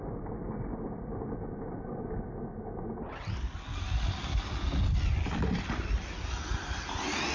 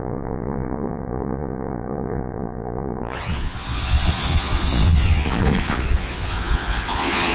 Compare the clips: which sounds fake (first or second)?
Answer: second